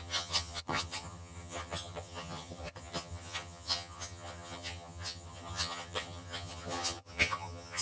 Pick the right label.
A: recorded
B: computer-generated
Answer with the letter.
B